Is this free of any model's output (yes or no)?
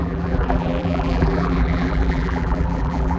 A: no